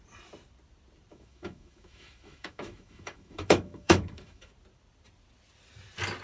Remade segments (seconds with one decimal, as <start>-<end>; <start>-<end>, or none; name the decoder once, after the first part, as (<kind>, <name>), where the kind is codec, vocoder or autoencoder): 1.1-4.5 (autoencoder, DAC-VAE)